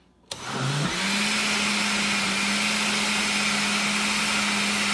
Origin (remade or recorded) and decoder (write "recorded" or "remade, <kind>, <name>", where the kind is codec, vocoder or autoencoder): recorded